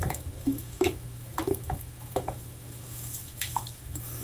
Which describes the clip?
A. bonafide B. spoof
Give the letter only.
B